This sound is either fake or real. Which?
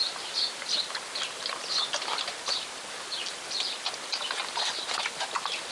real